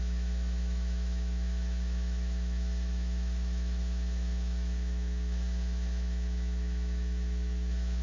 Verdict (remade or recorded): remade